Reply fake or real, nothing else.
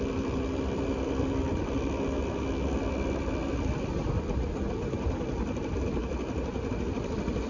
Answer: real